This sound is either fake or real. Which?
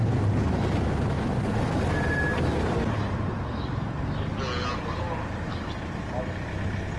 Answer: real